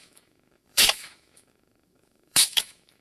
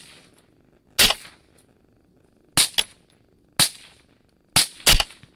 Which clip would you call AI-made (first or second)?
first